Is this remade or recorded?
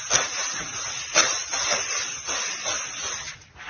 recorded